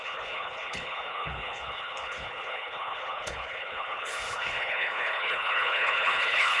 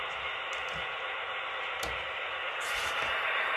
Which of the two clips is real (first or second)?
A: second